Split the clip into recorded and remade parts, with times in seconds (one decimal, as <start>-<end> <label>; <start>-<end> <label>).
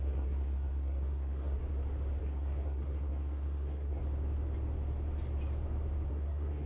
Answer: 0.0-1.6 remade; 1.6-2.2 recorded; 2.2-4.0 remade; 4.0-6.1 recorded; 6.1-6.7 remade